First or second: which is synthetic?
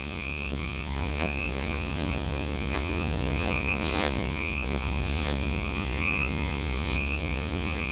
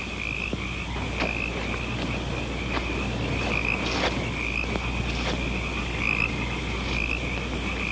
first